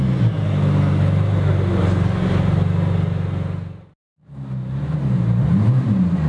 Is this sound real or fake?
real